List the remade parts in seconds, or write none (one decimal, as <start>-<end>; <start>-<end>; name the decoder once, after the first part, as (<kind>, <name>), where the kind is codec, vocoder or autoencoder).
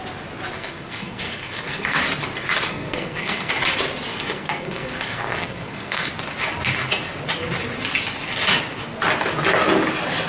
0.5-2.0 (codec, SNAC); 2.7-3.5; 4.1-6.1